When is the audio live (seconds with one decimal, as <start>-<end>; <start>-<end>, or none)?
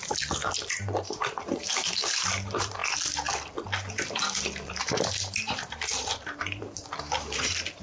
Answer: 0.0-0.6; 2.8-4.8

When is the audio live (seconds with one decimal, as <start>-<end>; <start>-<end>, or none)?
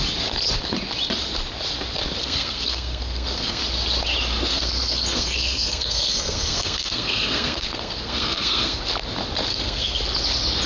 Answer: 0.0-2.2; 3.6-4.5; 8.8-9.5; 10.0-10.7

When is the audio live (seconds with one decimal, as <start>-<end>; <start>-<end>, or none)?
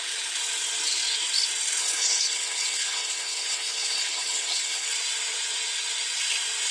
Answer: 0.0-1.8; 4.9-6.7